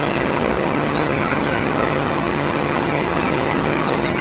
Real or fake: fake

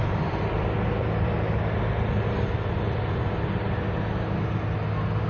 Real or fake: real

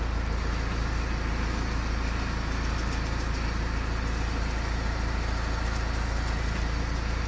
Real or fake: real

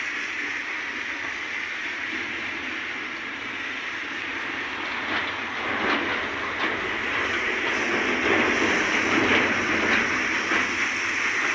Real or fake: real